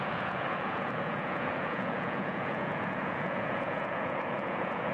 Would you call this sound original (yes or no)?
no